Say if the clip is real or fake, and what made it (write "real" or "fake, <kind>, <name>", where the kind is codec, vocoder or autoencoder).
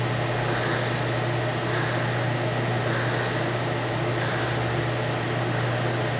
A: real